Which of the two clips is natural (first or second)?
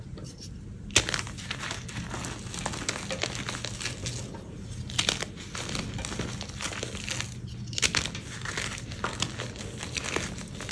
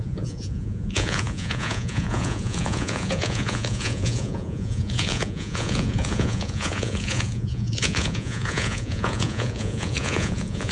first